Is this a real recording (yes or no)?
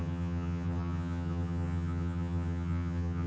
no